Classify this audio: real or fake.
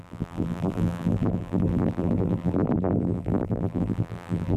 fake